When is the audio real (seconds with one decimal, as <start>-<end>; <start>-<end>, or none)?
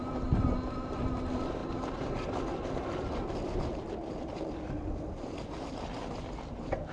0.0-6.9